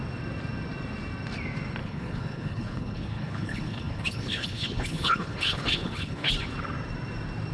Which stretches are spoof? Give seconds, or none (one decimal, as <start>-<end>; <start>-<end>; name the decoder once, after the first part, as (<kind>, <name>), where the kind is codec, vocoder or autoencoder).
1.8-6.3 (codec, HILCodec)